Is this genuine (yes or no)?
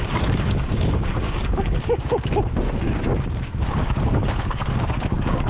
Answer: no